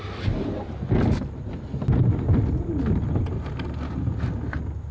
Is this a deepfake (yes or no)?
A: no